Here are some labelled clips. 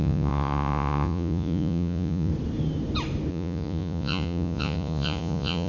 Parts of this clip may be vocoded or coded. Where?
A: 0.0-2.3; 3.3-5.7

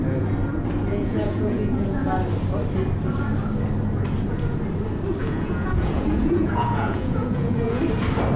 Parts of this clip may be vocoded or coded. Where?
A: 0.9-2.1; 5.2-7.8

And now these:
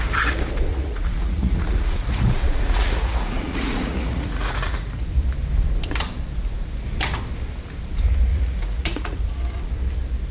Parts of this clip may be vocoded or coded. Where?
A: 0.7-4.9; 8.3-9.2

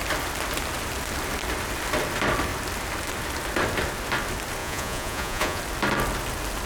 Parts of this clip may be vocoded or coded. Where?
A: 4.6-5.6